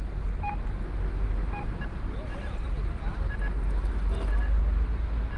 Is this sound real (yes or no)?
yes